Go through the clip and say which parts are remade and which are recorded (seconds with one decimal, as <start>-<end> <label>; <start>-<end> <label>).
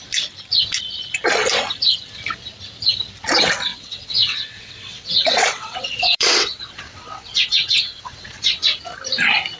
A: 0.0-3.7 recorded; 3.7-8.8 remade; 8.8-9.6 recorded